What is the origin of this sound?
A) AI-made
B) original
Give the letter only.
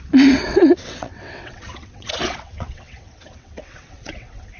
A